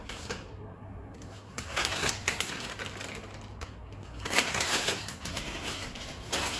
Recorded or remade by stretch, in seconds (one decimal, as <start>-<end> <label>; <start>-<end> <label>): 0.0-2.7 remade; 2.7-3.6 recorded; 3.6-6.6 remade

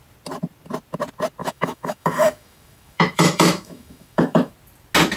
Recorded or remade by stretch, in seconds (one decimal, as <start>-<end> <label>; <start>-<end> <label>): 0.0-1.4 recorded; 1.4-4.5 remade; 4.5-5.2 recorded

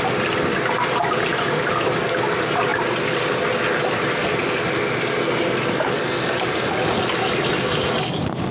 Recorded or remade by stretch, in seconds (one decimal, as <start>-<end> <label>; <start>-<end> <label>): 0.0-8.5 recorded